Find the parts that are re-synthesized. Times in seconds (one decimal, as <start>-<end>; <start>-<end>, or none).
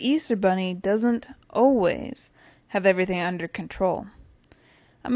none